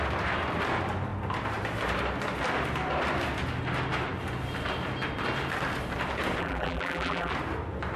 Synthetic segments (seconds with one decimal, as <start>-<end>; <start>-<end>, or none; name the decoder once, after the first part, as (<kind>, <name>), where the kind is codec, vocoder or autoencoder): 6.4-7.3 (vocoder, BigVGAN v2)